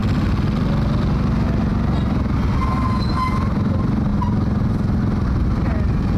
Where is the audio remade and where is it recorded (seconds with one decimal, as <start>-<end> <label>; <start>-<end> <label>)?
0.0-6.2 recorded